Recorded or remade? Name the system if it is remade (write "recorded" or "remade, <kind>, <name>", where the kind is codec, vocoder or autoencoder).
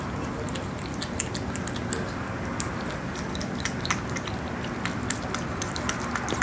recorded